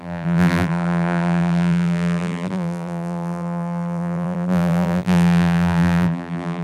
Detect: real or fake fake